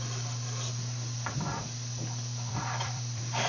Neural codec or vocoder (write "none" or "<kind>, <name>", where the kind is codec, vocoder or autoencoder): vocoder, BigVGAN v2